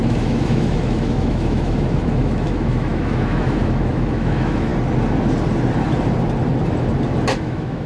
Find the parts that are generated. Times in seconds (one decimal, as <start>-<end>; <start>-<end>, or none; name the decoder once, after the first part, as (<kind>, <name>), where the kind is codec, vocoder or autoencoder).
0.0-4.7 (autoencoder, DAC-VAE); 7.4-7.9